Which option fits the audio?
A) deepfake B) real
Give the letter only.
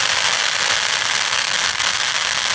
B